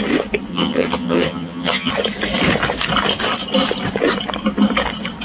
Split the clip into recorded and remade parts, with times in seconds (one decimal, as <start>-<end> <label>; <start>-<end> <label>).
0.0-0.5 recorded; 0.5-1.9 remade; 1.9-5.2 recorded